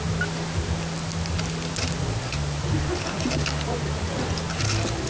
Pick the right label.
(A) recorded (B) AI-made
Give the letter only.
A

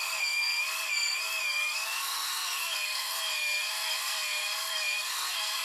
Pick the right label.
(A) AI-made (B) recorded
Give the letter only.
A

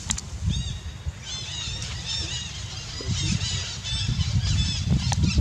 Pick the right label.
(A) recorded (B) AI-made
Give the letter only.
A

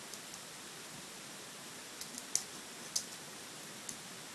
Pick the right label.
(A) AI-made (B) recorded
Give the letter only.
B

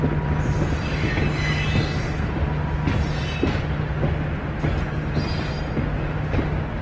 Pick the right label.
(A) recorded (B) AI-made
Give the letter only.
A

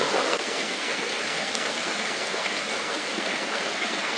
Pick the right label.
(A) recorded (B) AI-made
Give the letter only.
B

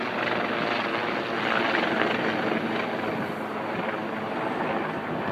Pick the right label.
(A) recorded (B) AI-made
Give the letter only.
A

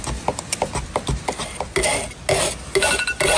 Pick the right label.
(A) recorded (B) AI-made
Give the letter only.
A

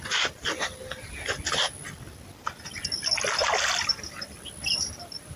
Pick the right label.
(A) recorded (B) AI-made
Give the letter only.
A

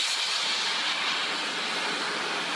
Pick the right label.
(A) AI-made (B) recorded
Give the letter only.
B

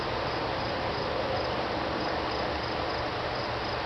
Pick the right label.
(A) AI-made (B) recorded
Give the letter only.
B